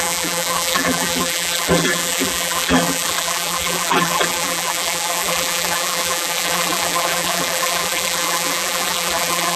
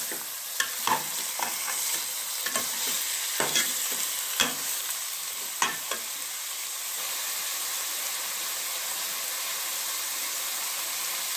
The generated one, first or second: first